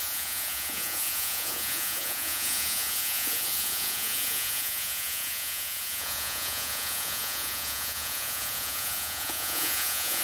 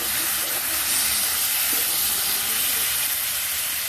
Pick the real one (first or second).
second